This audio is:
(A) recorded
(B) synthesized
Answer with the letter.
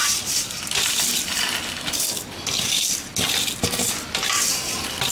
A